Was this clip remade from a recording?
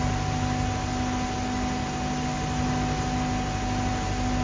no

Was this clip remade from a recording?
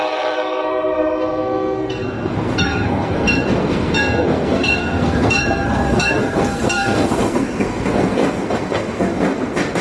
yes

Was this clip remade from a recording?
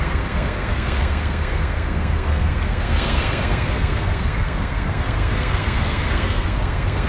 yes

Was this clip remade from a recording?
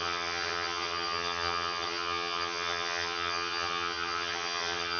yes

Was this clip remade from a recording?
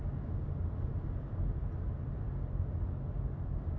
no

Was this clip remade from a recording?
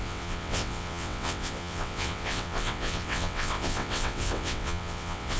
yes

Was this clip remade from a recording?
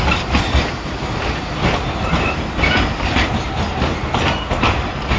no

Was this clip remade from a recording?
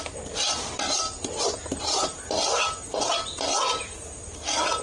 no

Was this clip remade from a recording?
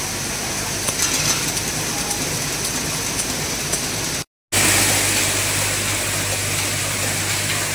no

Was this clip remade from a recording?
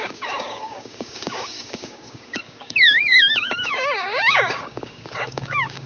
yes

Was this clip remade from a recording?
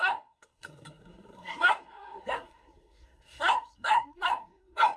yes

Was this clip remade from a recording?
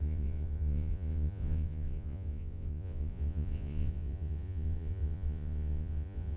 yes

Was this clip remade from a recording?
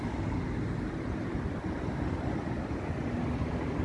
no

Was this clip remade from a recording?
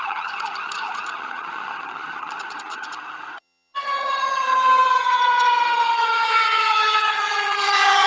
yes